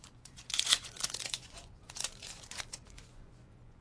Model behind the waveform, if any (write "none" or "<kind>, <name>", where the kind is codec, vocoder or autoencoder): vocoder, Vocos